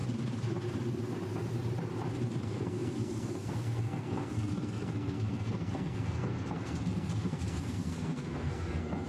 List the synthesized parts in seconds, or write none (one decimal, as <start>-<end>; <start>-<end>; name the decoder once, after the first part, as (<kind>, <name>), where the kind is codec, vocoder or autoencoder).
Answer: 2.4-9.1 (codec, SNAC)